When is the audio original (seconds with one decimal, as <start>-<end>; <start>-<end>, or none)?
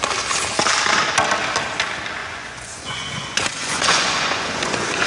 0.0-2.2